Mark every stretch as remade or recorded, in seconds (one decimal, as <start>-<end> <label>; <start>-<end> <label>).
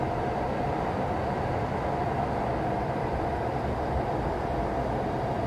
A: 0.0-2.0 recorded; 2.0-5.5 remade